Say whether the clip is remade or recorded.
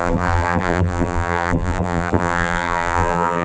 remade